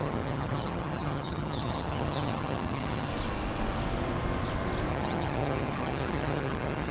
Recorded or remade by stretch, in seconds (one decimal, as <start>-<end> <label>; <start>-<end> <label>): 0.0-3.1 remade; 3.1-4.9 recorded; 4.9-6.9 remade

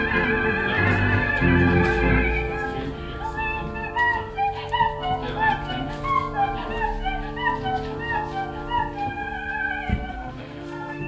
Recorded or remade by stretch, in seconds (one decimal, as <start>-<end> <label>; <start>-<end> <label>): 0.0-9.9 recorded; 9.9-11.1 remade

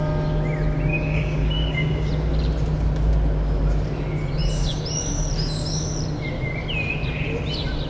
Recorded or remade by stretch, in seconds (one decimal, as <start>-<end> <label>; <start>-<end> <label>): 0.0-0.9 recorded; 0.9-2.1 remade; 2.1-7.9 recorded

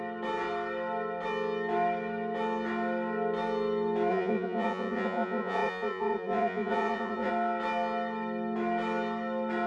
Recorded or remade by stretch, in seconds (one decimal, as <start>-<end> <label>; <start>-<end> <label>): 0.0-4.1 recorded; 4.1-7.3 remade; 7.3-9.7 recorded

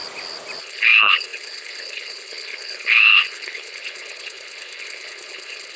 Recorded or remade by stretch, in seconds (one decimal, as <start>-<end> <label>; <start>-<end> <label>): 0.0-0.6 recorded; 0.6-5.8 remade